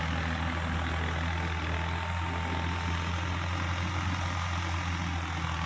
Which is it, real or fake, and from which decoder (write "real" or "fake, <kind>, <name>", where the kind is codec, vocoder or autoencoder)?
real